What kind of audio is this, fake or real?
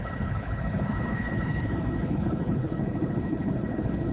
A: fake